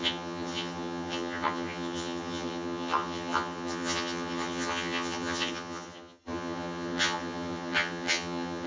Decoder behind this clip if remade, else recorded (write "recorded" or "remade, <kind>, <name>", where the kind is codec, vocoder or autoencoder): remade, vocoder, HiFi-GAN